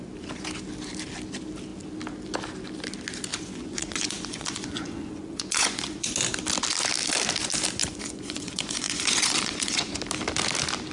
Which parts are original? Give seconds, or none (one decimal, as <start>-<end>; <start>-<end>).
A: 0.0-3.3; 6.1-7.8; 10.0-10.9